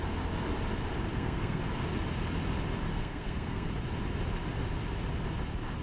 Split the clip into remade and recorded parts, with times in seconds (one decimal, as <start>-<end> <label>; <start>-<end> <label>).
0.0-1.1 recorded; 1.1-1.6 remade; 1.6-2.9 recorded; 2.9-3.7 remade; 3.7-5.8 recorded